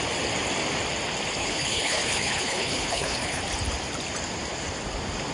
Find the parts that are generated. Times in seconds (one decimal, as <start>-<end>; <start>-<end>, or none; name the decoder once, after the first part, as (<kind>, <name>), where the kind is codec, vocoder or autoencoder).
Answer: 1.4-3.4 (codec, HILCodec)